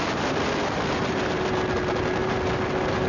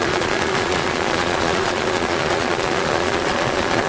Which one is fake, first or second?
second